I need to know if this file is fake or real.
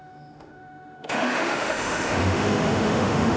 fake